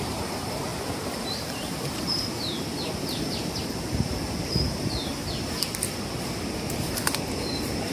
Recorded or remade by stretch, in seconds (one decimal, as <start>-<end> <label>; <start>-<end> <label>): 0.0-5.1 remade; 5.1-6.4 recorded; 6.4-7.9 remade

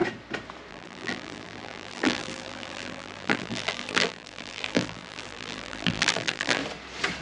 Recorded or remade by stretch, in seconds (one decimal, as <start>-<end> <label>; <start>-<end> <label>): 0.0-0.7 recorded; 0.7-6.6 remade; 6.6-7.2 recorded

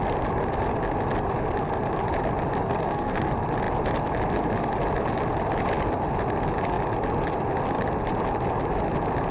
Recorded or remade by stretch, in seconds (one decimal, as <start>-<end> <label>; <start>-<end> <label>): 0.0-2.6 recorded; 2.6-3.3 remade; 3.3-9.3 recorded

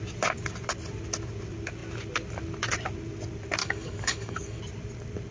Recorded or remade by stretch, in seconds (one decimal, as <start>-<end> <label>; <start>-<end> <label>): 0.0-3.6 recorded; 3.6-4.6 remade; 4.6-5.3 recorded

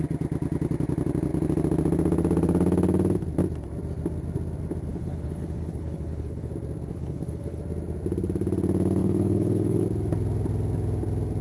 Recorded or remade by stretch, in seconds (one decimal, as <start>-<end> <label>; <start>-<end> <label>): 0.0-4.9 recorded; 4.9-6.5 remade; 6.5-6.9 recorded; 6.9-7.6 remade; 7.6-9.0 recorded; 9.0-9.8 remade; 9.8-11.4 recorded